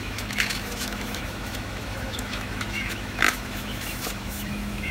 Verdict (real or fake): fake